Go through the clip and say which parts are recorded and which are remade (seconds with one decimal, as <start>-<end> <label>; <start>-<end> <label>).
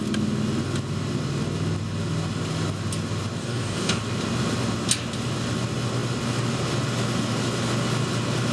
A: 0.0-3.4 recorded; 3.4-4.0 remade; 4.0-8.5 recorded